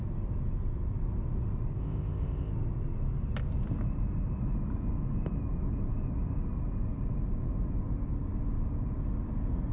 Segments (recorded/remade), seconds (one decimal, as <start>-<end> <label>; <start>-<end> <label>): 0.0-1.8 recorded; 1.8-2.5 remade; 2.5-9.7 recorded